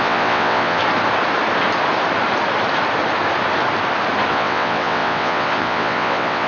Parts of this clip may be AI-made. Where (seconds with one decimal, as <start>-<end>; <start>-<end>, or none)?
0.0-0.8; 4.3-6.5

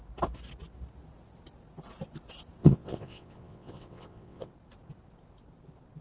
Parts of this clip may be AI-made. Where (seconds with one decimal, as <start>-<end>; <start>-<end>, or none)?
2.6-4.5

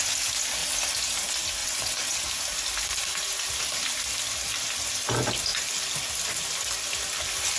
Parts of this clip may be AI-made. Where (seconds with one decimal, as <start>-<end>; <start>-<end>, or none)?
1.6-2.3